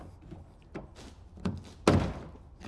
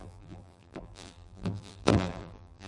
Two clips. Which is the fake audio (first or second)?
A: second